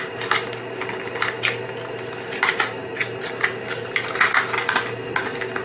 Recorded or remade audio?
recorded